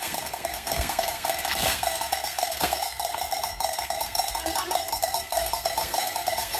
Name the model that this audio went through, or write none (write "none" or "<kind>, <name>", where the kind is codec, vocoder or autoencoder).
codec, SNAC